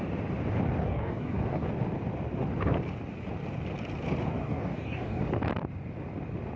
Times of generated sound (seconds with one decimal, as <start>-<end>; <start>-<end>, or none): 0.8-1.7; 4.4-5.2